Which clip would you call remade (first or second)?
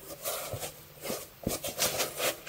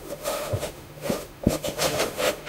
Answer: second